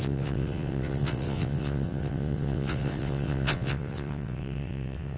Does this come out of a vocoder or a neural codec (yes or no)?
yes